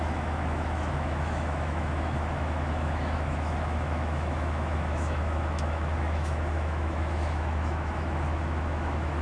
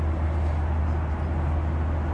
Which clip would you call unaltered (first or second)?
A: second